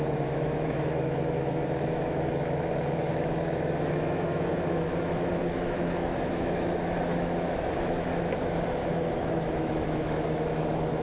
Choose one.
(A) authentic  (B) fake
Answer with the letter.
B